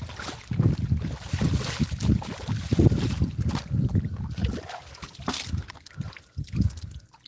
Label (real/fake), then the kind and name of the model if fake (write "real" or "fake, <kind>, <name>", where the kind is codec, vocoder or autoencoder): real